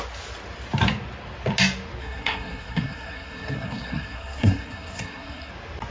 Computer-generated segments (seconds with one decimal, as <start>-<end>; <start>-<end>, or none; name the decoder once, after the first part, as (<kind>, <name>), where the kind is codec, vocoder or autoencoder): 2.0-5.5 (codec, SNAC)